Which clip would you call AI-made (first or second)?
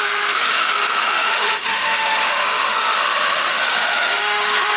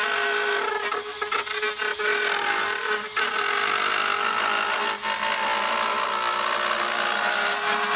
first